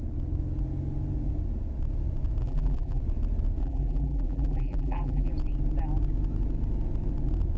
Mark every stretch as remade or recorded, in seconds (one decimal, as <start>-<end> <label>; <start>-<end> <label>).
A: 0.0-2.4 recorded; 2.4-3.0 remade; 3.0-3.6 recorded; 3.6-5.3 remade; 5.3-7.6 recorded